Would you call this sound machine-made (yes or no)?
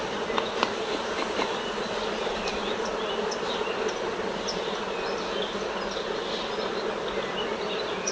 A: no